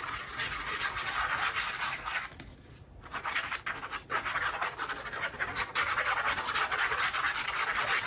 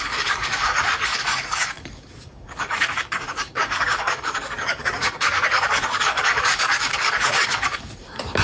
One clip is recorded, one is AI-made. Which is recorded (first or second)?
first